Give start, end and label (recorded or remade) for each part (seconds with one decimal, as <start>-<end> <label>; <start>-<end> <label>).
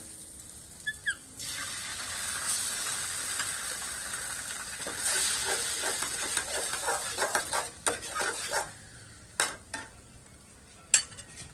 0.0-11.5 recorded